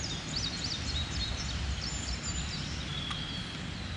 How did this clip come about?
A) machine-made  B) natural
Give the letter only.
B